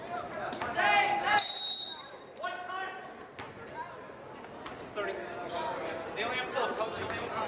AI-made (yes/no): no